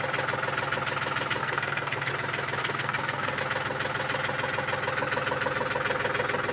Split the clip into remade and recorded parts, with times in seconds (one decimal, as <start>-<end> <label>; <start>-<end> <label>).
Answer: 0.0-1.4 recorded; 1.4-2.1 remade; 2.1-2.6 recorded; 2.6-3.4 remade; 3.4-6.5 recorded